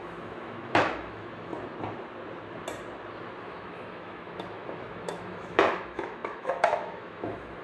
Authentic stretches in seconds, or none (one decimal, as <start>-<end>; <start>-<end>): 1.5-3.4